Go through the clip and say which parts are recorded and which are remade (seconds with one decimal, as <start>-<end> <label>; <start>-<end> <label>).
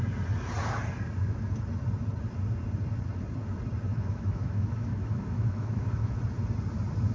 0.0-3.9 recorded; 3.9-6.2 remade; 6.2-7.1 recorded